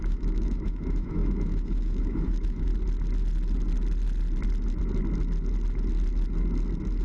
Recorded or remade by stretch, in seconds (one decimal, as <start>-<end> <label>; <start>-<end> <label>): 0.0-2.7 remade; 2.7-7.0 recorded